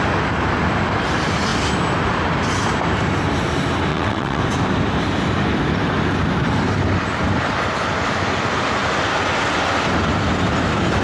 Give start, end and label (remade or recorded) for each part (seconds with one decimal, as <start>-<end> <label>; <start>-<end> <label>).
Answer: 0.0-3.9 recorded; 3.9-4.4 remade; 4.4-11.0 recorded